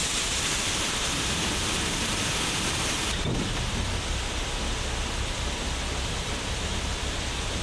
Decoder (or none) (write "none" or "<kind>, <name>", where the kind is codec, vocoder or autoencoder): none